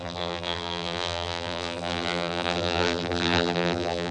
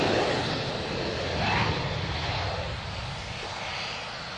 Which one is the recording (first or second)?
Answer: second